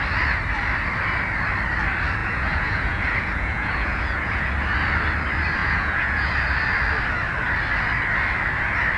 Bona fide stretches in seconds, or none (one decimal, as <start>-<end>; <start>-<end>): 0.0-2.2; 4.5-5.6; 6.3-9.0